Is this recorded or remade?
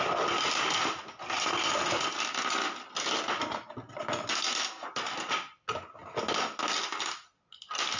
recorded